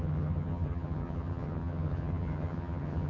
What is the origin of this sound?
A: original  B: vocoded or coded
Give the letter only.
B